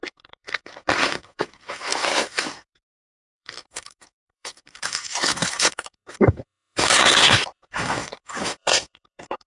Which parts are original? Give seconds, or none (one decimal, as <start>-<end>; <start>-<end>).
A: none